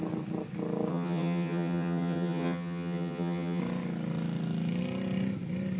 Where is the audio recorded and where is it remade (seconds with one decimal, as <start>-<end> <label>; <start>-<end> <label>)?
0.0-0.9 recorded; 0.9-3.6 remade; 3.6-5.8 recorded